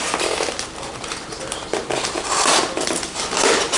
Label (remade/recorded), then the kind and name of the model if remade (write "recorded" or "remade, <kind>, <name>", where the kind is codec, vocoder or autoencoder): recorded